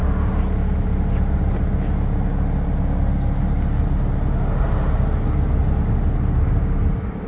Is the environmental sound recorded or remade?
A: recorded